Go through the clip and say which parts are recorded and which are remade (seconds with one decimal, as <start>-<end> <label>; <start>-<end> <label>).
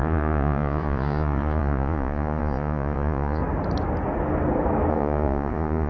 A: 0.0-3.4 remade; 3.4-4.9 recorded; 4.9-5.9 remade